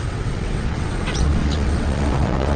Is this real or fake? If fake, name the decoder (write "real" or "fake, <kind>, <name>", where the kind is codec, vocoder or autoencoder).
fake, vocoder, WaveNeXt